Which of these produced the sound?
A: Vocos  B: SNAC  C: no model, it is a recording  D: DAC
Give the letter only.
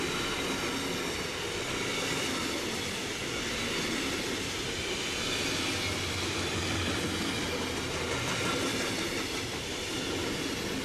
C